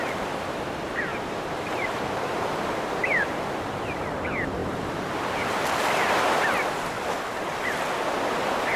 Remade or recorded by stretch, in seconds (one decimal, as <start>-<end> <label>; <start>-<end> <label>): 0.0-1.1 recorded; 1.1-2.8 remade; 2.8-8.8 recorded